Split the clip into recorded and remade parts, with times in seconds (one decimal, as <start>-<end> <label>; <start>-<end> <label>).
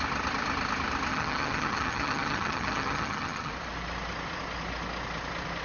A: 0.0-1.1 recorded; 1.1-3.5 remade; 3.5-5.6 recorded